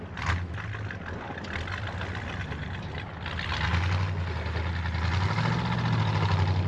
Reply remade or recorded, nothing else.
recorded